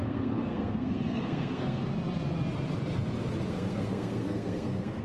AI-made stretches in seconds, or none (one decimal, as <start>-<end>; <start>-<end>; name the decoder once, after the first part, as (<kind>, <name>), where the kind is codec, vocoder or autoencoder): 0.0-1.8 (codec, SNAC); 3.5-5.0